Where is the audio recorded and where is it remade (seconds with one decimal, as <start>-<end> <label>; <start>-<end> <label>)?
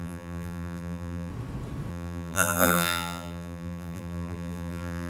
0.0-1.3 remade; 1.3-1.9 recorded; 1.9-5.1 remade